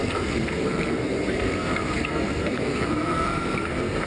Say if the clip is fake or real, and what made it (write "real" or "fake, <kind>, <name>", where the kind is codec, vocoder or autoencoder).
fake, codec, SNAC